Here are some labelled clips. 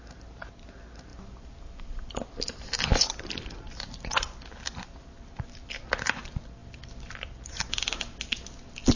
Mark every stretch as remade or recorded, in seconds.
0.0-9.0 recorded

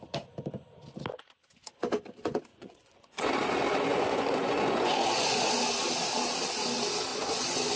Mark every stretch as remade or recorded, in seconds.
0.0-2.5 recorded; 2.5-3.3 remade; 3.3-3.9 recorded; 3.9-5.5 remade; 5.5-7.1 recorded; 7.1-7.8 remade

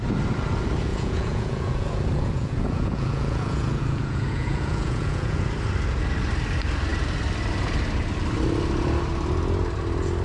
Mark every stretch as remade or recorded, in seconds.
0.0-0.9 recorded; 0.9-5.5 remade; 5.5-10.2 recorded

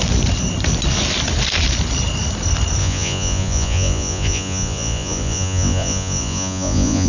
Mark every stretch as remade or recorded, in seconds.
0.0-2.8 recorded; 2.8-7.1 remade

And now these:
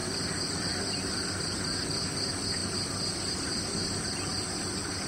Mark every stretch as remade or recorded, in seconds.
0.0-5.1 recorded